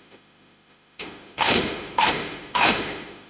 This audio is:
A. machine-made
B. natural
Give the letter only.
A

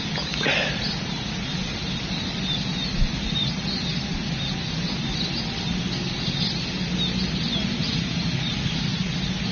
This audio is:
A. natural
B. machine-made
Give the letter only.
A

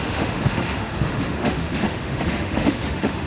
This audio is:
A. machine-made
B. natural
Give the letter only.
A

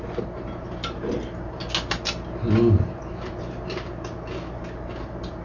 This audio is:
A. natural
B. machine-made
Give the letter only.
A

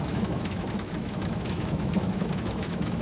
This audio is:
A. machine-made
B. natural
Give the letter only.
A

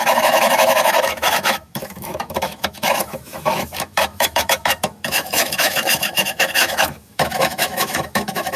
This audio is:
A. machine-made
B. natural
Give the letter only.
A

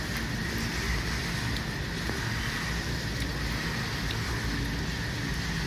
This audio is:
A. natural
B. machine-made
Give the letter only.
A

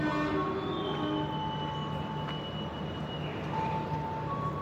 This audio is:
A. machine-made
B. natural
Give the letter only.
B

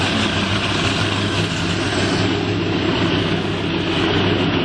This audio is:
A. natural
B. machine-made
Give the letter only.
A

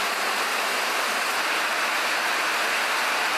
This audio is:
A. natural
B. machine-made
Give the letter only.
A